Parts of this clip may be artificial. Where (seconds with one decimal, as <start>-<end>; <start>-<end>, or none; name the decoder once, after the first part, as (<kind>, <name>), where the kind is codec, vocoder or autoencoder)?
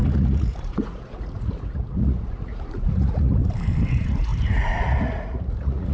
0.0-3.4 (vocoder, Vocos); 3.9-5.9